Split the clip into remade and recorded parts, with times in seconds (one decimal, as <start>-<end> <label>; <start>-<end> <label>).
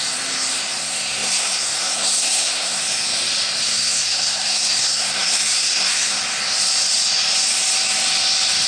0.0-0.8 recorded; 0.8-2.8 remade; 2.8-3.6 recorded; 3.6-6.2 remade; 6.2-8.7 recorded